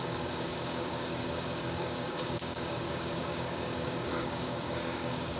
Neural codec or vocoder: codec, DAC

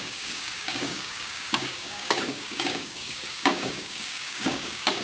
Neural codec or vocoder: codec, DAC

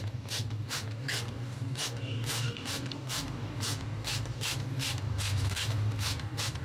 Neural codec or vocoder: codec, DAC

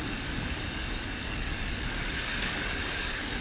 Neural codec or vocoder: codec, DAC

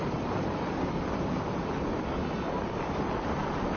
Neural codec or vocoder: none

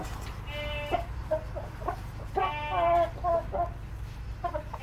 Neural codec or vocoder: none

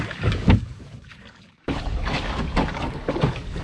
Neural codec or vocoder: codec, DAC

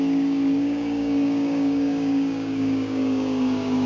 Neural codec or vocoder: codec, DAC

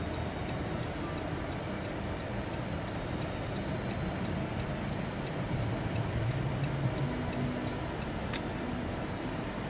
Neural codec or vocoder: none